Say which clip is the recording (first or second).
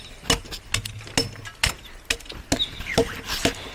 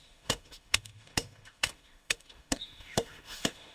first